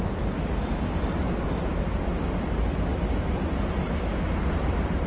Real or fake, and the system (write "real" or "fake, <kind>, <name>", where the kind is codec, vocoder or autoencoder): real